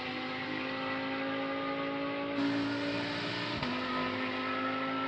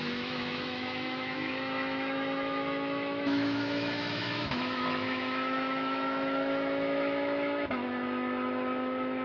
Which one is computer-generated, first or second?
second